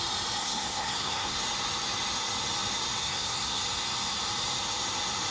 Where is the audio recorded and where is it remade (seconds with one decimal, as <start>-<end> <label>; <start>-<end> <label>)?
0.0-0.4 recorded; 0.4-1.4 remade; 1.4-3.0 recorded; 3.0-3.6 remade; 3.6-5.3 recorded